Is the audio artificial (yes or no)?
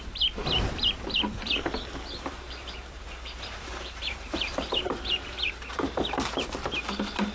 yes